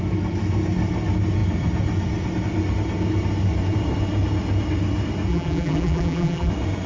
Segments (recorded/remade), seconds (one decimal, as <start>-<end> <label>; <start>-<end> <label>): 0.0-5.3 recorded; 5.3-6.5 remade; 6.5-6.9 recorded